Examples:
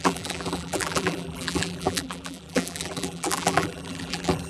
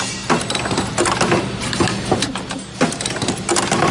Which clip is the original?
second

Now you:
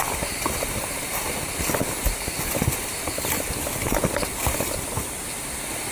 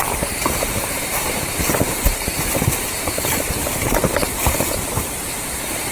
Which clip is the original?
first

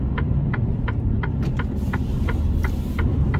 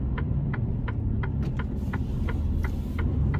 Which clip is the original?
second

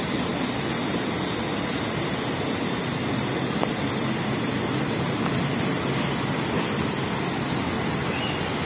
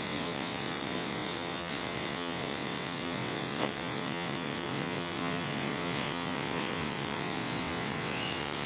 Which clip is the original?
first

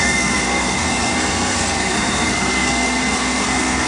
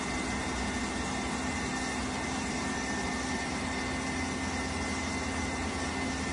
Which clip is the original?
second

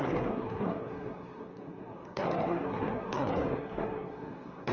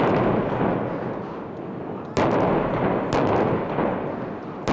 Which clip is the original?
second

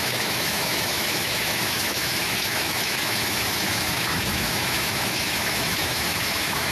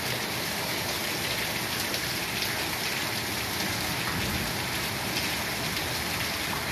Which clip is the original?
second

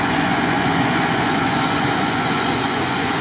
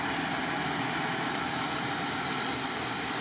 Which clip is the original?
second